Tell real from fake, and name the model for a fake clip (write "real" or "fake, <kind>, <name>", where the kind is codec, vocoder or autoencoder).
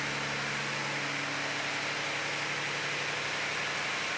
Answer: real